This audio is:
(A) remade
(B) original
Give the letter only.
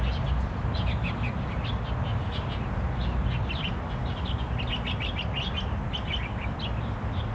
B